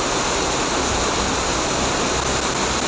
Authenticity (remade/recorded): recorded